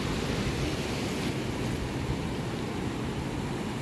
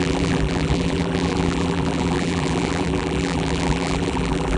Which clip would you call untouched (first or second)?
first